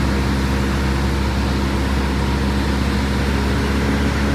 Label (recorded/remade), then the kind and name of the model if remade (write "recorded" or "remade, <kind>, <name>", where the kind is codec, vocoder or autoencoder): recorded